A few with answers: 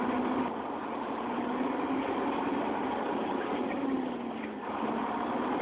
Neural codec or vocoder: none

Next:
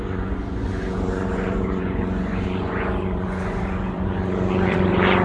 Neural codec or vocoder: vocoder, Vocos